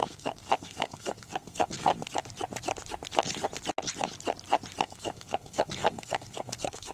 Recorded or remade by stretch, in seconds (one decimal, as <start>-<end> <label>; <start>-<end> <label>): 0.0-1.9 remade; 1.9-4.8 recorded; 4.8-6.9 remade